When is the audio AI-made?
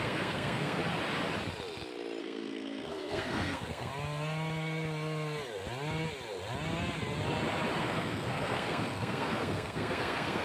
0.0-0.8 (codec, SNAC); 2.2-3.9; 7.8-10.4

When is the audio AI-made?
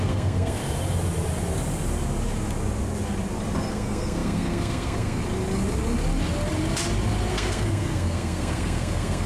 0.0-0.6 (codec, SNAC); 3.7-5.2; 7.3-9.3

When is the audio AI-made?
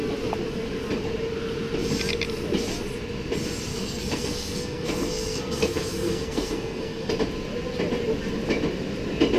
3.7-7.1 (codec, SNAC)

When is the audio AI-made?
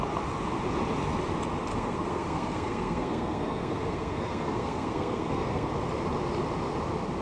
1.7-5.7 (codec, SNAC)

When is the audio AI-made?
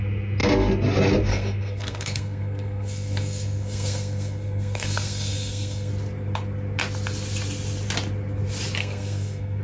1.3-5.9 (codec, SNAC); 8.8-9.6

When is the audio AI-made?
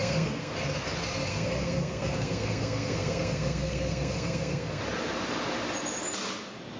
0.0-0.5 (codec, SNAC); 1.3-4.8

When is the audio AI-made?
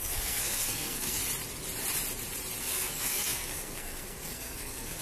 0.0-1.2 (codec, SNAC); 2.6-5.0